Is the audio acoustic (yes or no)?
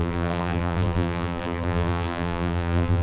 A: no